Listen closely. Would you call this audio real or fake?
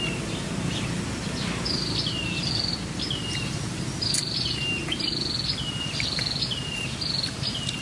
real